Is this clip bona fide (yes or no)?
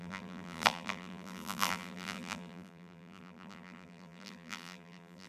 no